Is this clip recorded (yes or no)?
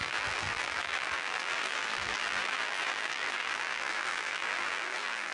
no